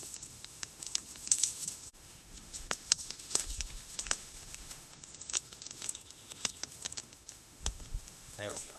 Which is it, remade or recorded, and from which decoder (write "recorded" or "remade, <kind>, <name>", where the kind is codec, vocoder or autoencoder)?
remade, autoencoder, DAC-VAE